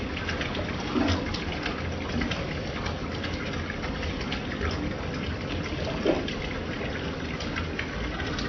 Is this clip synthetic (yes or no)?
no